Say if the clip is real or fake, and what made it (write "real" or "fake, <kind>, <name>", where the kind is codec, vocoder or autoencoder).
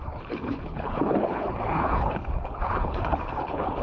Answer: fake, codec, HILCodec